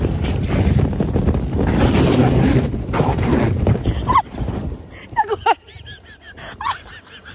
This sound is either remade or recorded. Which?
recorded